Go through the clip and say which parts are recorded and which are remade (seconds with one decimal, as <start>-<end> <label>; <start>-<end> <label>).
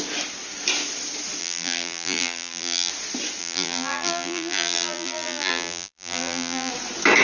0.0-1.4 recorded; 1.4-2.9 remade; 2.9-3.4 recorded; 3.4-6.7 remade; 6.7-7.2 recorded